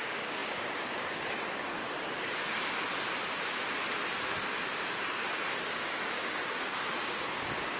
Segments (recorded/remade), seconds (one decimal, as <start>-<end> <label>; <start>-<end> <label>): 0.0-1.8 remade; 1.8-5.6 recorded; 5.6-7.8 remade